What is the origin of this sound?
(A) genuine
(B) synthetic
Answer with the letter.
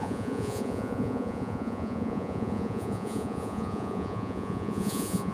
B